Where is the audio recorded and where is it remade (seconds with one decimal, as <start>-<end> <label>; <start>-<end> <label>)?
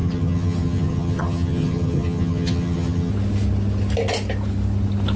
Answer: 0.0-3.1 remade; 3.1-5.2 recorded